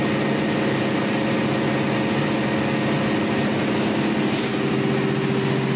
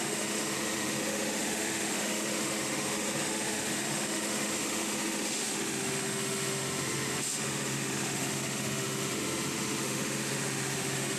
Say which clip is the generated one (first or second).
second